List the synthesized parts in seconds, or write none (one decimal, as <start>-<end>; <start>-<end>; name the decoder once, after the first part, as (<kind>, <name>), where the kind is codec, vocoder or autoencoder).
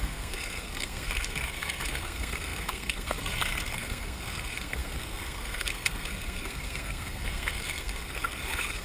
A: 0.0-8.8 (codec, SNAC)